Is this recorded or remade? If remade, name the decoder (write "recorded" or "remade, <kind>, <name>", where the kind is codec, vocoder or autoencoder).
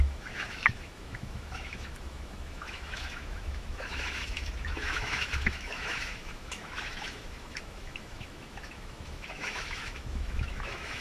remade, autoencoder, DAC-VAE